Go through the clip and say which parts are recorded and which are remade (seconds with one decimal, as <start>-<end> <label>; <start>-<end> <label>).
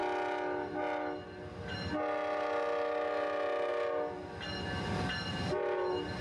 0.0-6.2 recorded